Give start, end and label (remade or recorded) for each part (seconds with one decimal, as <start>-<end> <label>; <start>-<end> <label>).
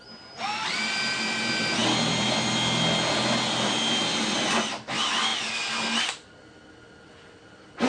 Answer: 0.0-7.9 recorded